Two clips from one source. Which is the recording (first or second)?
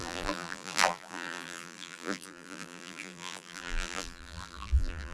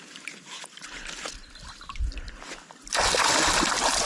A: second